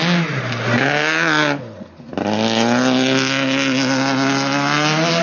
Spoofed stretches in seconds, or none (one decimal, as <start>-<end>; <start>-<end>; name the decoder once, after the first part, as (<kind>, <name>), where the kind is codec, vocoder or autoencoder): none